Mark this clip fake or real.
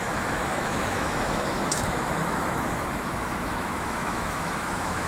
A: fake